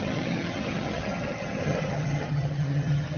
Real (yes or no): no